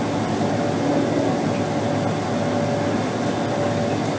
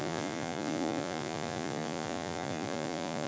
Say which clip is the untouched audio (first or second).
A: first